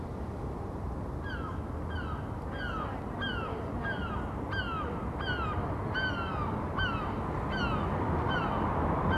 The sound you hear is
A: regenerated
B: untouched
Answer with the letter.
B